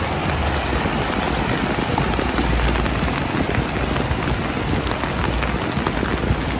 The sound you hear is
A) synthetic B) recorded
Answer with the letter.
B